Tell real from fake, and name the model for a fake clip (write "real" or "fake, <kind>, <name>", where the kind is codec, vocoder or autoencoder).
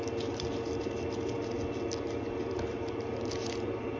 real